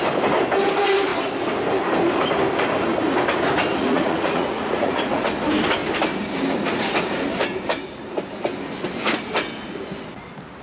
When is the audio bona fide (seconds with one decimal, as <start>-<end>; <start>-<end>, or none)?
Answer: 0.0-3.8; 5.2-10.6

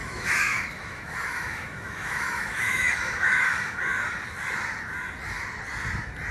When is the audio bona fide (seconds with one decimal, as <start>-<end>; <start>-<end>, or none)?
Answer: 3.8-6.3

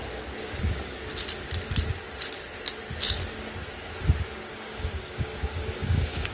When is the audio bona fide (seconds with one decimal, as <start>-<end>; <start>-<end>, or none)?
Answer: 0.0-0.6; 1.1-4.5

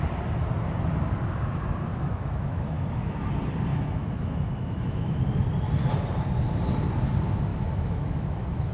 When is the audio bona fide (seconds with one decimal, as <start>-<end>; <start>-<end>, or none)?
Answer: 0.0-1.9; 3.3-3.7; 5.2-7.5

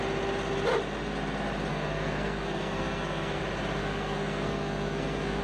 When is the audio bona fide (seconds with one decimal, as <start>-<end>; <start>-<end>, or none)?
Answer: 0.0-1.7; 3.4-3.8

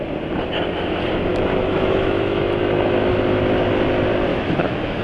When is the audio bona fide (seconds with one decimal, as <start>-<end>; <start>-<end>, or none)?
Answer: 0.0-1.3; 2.6-4.3

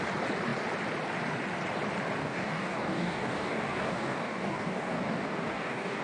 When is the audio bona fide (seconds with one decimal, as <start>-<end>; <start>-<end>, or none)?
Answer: 0.0-2.2

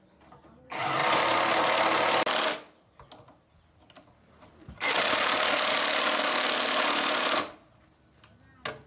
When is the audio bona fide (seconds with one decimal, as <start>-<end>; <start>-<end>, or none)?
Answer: 0.0-8.9